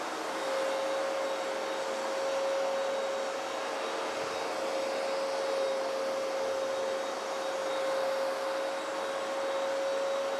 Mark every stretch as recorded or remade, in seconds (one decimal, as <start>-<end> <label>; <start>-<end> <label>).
0.0-10.4 recorded